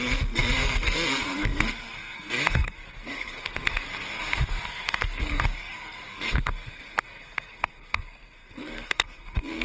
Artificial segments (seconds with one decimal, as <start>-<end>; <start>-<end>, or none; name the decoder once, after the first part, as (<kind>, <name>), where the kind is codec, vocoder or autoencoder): 0.0-4.2 (codec, SNAC); 4.7-9.6